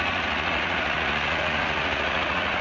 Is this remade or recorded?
remade